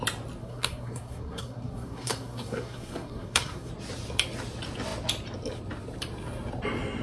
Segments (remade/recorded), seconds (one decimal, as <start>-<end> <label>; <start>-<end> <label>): 0.0-0.4 recorded; 0.4-3.7 remade; 3.7-7.0 recorded

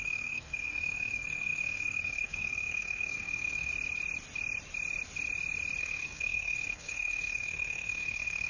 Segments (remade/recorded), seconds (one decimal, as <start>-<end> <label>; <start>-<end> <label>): 0.0-3.7 remade; 3.7-5.8 recorded; 5.8-8.5 remade

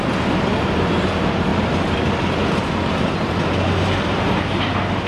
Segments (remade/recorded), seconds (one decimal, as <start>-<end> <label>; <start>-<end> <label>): 0.0-5.1 recorded

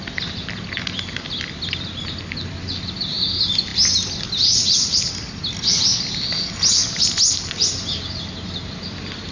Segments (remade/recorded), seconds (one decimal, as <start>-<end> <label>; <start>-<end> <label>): 0.0-9.3 recorded

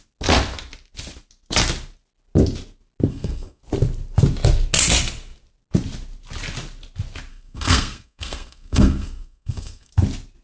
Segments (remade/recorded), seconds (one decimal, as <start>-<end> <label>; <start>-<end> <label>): 0.0-3.1 recorded; 3.1-3.6 remade; 3.6-7.3 recorded; 7.3-9.9 remade; 9.9-10.4 recorded

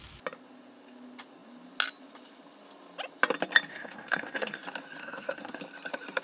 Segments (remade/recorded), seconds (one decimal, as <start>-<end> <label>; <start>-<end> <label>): 0.0-3.7 recorded; 3.7-4.6 remade; 4.6-5.0 recorded; 5.0-5.6 remade; 5.6-6.2 recorded

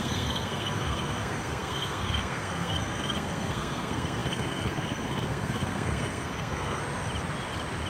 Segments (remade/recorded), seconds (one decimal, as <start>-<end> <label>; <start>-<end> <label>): 0.0-6.8 remade; 6.8-7.9 recorded